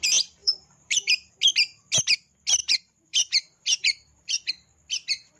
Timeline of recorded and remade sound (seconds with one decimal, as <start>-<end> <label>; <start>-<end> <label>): 0.0-0.4 recorded; 0.4-1.3 remade; 1.3-2.6 recorded; 2.6-4.5 remade; 4.5-5.4 recorded